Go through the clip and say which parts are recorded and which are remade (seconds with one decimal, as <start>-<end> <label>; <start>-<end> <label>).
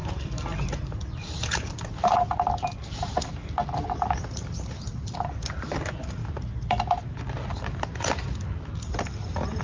0.0-9.6 recorded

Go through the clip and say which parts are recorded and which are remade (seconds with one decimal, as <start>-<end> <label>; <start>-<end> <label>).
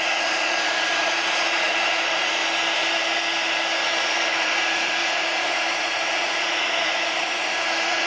0.0-2.4 remade; 2.4-4.0 recorded; 4.0-8.1 remade